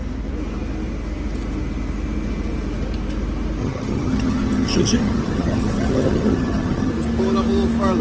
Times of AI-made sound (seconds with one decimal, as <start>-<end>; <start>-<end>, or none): 3.6-6.9